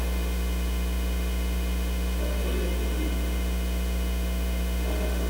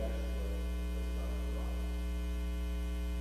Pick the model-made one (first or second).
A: first